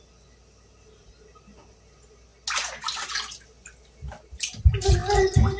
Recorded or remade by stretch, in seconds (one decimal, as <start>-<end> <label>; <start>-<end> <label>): 0.0-5.6 recorded